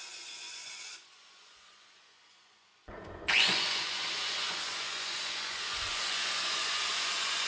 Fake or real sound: fake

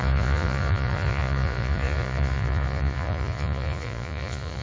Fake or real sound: fake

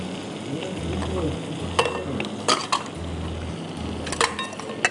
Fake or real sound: real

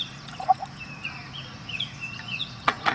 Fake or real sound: fake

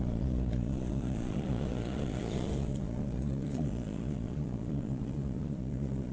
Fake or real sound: fake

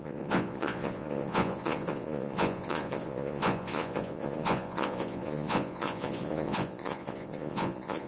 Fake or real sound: fake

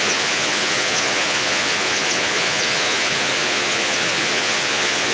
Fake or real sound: fake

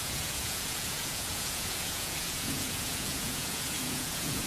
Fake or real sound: fake